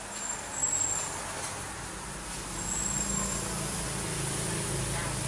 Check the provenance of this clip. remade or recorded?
recorded